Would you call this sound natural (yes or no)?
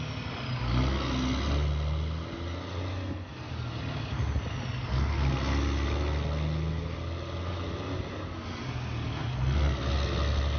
yes